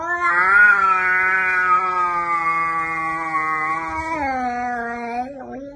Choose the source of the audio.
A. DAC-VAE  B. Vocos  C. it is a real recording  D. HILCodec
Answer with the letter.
C